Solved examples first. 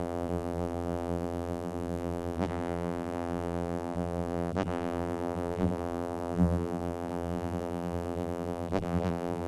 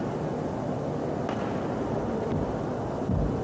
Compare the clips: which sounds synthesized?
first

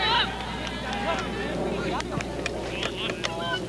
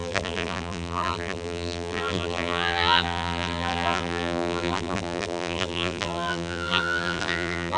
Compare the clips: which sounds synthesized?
second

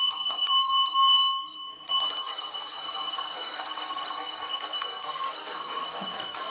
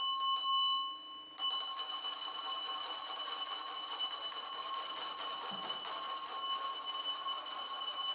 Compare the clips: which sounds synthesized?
first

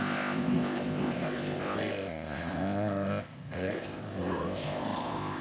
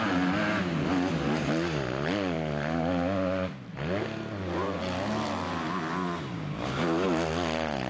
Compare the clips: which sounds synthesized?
first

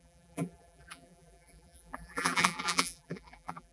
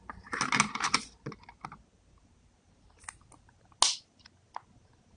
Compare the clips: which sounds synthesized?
first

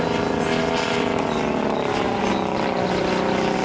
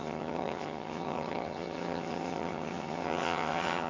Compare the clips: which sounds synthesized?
second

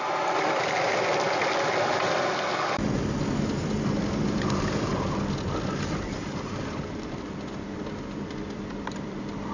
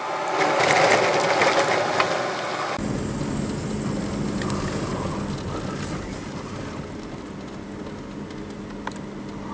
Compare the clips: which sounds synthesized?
first